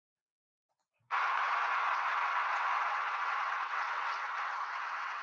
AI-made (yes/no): yes